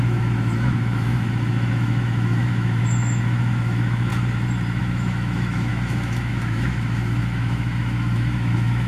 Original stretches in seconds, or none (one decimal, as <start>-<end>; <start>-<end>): 4.1-4.8